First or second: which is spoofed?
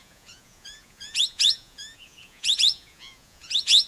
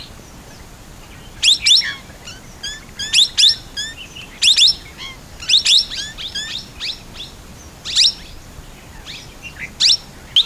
first